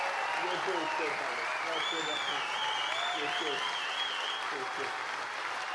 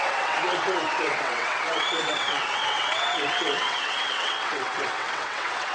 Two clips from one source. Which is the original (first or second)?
first